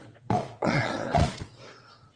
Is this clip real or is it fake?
fake